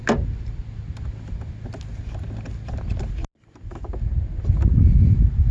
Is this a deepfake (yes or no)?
no